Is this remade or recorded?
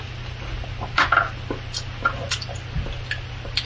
recorded